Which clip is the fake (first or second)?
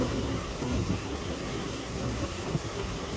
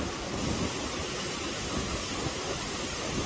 first